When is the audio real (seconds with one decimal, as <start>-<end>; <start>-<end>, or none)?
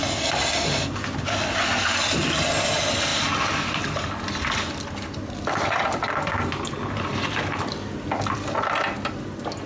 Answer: 0.0-9.7